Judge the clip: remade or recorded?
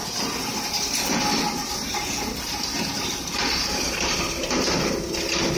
recorded